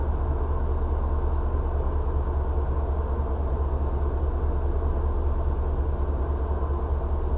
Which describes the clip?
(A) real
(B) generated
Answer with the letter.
A